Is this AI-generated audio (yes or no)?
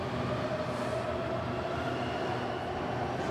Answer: no